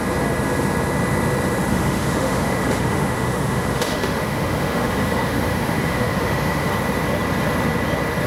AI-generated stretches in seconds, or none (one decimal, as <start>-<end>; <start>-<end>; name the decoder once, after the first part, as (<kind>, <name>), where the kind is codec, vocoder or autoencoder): 1.7-6.7 (autoencoder, DAC-VAE)

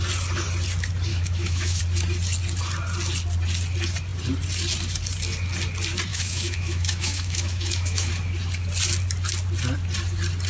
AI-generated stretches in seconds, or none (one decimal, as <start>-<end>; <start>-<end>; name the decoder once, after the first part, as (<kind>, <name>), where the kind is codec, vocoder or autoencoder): 1.1-1.8 (autoencoder, DAC-VAE); 6.1-8.1

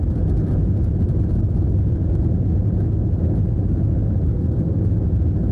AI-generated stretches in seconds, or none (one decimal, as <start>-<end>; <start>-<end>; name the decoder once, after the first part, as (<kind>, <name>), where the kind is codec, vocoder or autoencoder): 4.3-5.0 (codec, SNAC)

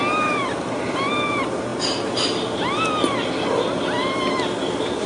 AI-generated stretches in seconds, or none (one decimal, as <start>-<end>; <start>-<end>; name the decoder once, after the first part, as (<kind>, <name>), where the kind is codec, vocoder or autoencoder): none

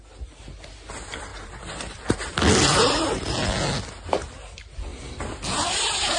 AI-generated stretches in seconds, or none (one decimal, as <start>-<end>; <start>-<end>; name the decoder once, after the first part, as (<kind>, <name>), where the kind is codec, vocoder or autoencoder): 1.3-3.0 (vocoder, BigVGAN v2); 4.9-5.8

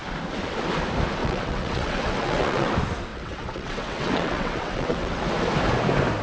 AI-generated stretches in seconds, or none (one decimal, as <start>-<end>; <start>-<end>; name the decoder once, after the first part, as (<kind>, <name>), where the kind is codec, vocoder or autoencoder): 1.2-2.7 (vocoder, WaveNeXt); 3.1-5.2

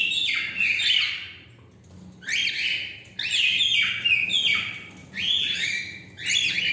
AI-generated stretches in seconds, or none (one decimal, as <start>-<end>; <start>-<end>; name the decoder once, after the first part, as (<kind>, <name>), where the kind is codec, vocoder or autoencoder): 5.0-5.7 (vocoder, Vocos)

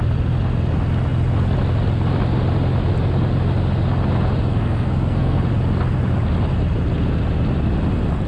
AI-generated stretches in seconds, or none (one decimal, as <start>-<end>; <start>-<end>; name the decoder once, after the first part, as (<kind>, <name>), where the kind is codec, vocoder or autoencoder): 4.5-5.5 (codec, SNAC)